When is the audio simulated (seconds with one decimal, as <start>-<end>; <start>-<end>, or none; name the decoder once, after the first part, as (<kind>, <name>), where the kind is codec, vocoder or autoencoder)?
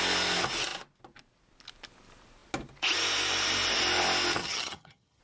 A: 4.4-5.2 (vocoder, HiFi-GAN)